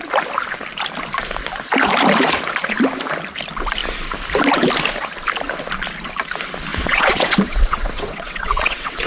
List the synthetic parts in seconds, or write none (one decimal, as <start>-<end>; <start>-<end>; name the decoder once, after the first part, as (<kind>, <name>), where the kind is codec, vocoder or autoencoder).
6.7-9.1 (vocoder, WaveNeXt)